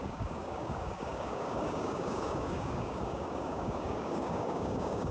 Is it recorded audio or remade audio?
remade